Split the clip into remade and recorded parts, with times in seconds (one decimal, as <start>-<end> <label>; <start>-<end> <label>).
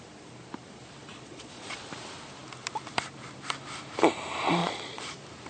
0.0-1.1 recorded; 1.1-1.9 remade; 1.9-4.6 recorded; 4.6-5.1 remade; 5.1-5.5 recorded